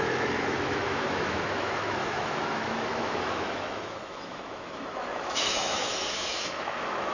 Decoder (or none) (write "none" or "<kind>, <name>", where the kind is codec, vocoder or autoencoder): autoencoder, DAC-VAE